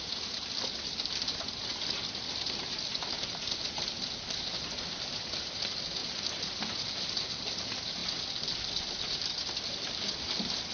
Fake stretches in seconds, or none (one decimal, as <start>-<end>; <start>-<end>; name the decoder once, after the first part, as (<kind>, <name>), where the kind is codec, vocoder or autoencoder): 0.0-1.7 (vocoder, BigVGAN v2); 3.4-8.0; 9.0-10.7